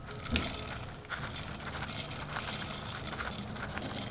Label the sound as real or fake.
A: real